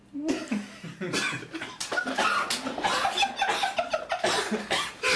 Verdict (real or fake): real